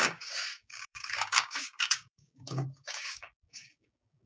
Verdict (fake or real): fake